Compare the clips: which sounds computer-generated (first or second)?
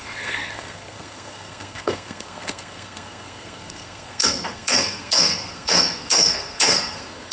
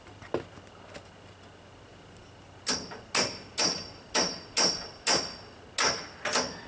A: first